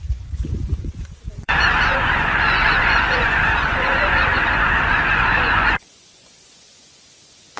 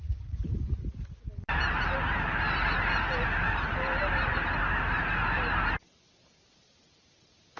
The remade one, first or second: first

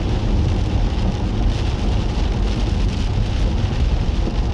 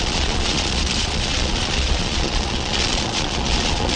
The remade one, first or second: second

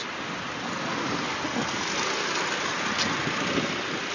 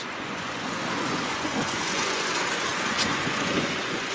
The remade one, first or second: second